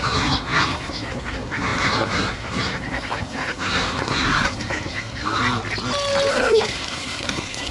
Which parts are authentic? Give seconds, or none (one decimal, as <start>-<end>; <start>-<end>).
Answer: 5.4-6.3